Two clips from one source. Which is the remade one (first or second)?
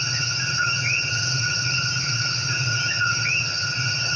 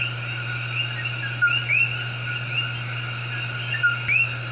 first